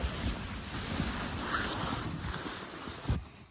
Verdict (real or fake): real